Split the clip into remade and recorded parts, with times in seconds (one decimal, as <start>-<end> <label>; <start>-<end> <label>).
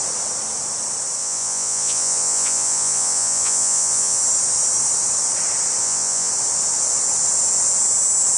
0.0-1.2 recorded; 1.2-4.2 remade; 4.2-5.8 recorded; 5.8-6.3 remade; 6.3-8.4 recorded